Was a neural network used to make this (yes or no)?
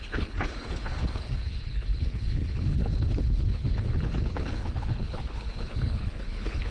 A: yes